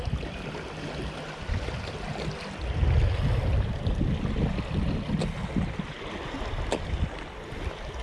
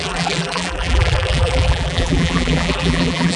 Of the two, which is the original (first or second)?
first